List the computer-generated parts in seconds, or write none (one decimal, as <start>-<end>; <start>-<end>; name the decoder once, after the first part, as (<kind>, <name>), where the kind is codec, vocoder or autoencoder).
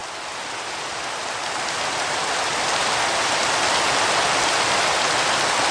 none